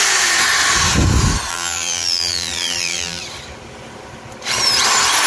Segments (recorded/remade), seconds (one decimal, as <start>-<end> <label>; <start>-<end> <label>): 0.0-1.5 recorded; 1.5-3.2 remade; 3.2-5.3 recorded